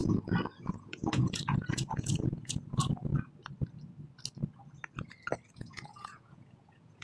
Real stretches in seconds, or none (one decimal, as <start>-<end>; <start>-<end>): 0.0-0.6; 3.1-5.5